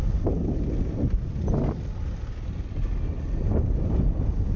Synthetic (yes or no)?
no